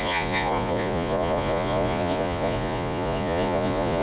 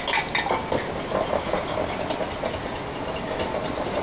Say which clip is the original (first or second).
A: second